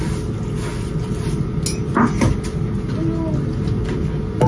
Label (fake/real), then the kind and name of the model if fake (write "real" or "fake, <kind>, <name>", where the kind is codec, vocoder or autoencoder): real